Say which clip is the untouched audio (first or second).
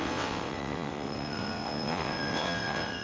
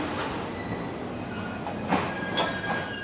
second